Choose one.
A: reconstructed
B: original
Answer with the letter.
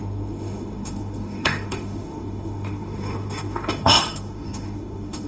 A